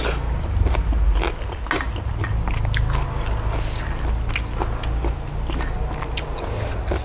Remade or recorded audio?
recorded